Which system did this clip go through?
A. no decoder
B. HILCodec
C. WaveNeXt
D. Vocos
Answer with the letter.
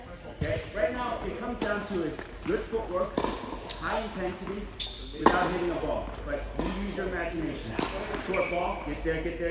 A